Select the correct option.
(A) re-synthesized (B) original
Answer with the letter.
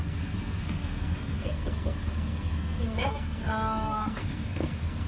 A